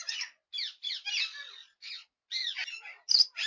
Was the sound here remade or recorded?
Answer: recorded